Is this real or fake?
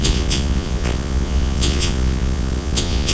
fake